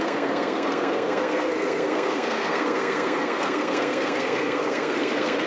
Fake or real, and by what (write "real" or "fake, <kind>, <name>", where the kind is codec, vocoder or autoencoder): fake, codec, SNAC